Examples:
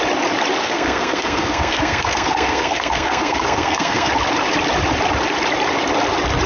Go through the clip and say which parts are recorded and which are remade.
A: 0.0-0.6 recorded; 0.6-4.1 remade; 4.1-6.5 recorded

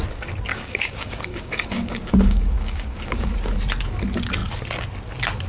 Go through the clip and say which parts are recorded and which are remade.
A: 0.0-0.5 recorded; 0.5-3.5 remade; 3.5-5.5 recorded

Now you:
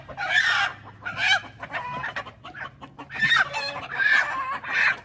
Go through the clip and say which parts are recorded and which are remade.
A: 0.0-5.0 recorded